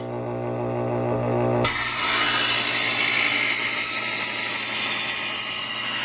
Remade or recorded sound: recorded